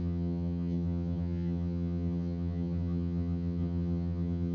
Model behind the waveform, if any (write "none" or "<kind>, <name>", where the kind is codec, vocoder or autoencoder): vocoder, HiFi-GAN